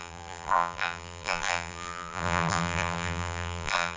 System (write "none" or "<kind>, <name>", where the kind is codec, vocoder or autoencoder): vocoder, BigVGAN v2